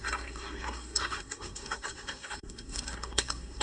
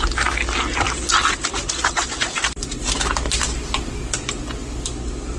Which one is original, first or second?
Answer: second